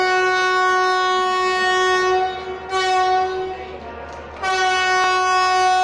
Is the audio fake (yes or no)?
no